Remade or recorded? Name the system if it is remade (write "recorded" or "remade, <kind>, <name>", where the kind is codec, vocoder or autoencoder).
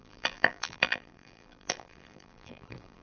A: remade, vocoder, BigVGAN v2